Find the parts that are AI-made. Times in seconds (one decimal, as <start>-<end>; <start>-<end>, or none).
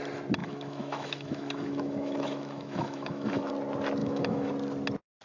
0.4-3.5; 4.0-4.5